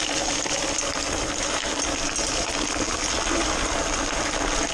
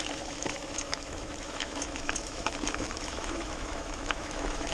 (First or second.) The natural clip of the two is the first